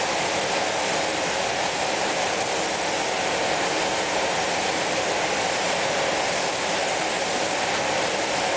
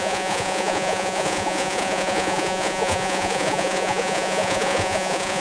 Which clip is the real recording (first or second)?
first